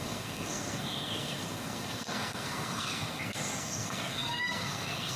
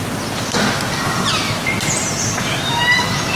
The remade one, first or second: first